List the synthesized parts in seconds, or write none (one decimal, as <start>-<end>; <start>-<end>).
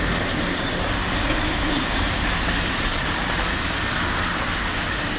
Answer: 1.5-3.1